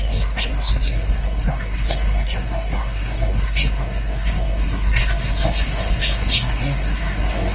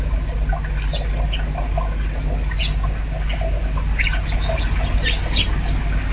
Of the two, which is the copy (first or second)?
first